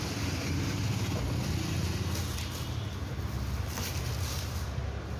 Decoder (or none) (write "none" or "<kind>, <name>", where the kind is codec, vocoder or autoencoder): none